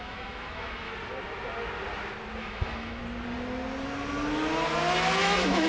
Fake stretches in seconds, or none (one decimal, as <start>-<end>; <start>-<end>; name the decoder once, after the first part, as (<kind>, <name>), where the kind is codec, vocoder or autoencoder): 0.0-0.9 (autoencoder, DAC-VAE); 2.4-3.0; 5.2-5.7